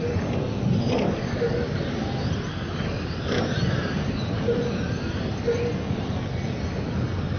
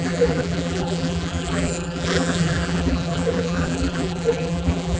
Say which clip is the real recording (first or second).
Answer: first